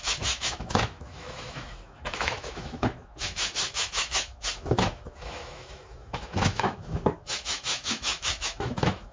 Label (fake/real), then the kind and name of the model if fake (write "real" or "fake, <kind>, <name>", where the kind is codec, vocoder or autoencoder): fake, autoencoder, DAC-VAE